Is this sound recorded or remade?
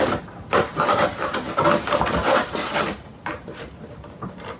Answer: recorded